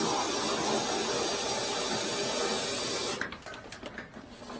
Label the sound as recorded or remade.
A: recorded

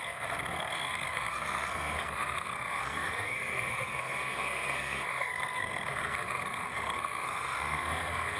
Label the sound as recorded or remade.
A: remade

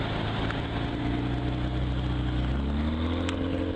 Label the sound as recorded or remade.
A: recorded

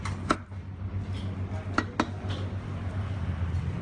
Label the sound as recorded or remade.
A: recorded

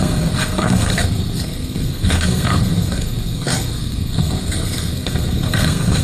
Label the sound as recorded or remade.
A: remade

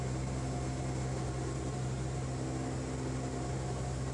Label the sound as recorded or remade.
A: recorded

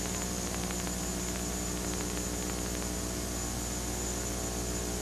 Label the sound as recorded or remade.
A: recorded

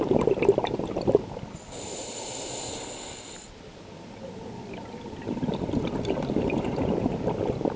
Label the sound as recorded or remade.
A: recorded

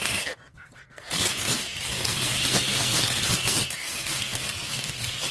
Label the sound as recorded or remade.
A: remade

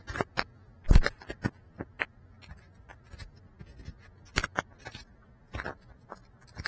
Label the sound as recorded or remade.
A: recorded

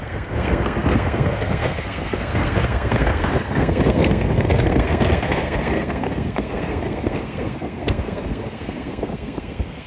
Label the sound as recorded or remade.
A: remade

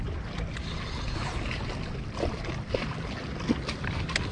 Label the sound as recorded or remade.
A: recorded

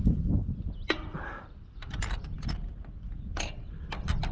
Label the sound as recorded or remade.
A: recorded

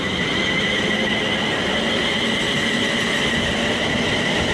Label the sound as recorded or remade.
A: recorded